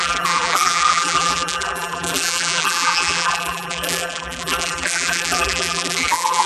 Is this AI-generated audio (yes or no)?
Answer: yes